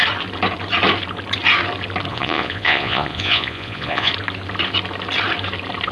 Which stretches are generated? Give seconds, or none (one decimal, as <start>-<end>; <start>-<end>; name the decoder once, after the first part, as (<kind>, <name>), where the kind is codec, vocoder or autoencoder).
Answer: 2.1-4.1 (vocoder, Vocos)